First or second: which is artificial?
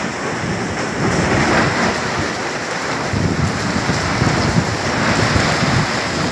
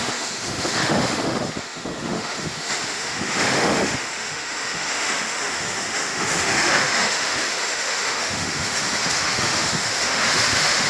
second